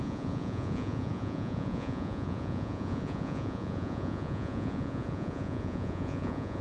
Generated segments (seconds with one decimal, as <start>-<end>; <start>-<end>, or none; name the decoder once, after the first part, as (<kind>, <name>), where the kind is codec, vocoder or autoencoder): 0.0-6.6 (vocoder, Vocos)